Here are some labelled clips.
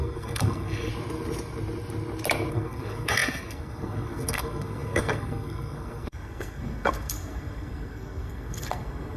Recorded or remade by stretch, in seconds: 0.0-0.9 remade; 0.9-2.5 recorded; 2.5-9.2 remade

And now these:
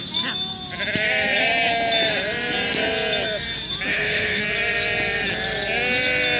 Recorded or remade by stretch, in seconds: 0.0-3.9 recorded; 3.9-4.4 remade; 4.4-6.4 recorded

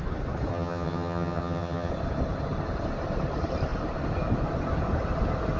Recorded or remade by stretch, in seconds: 0.0-0.5 recorded; 0.5-1.9 remade; 1.9-5.6 recorded

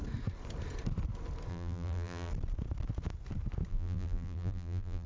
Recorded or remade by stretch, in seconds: 0.0-1.5 recorded; 1.5-2.3 remade; 2.3-3.7 recorded; 3.7-5.1 remade

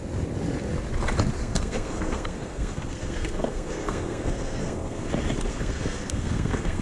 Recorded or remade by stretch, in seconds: 0.0-1.4 recorded; 1.4-5.1 remade; 5.1-5.5 recorded; 5.5-6.8 remade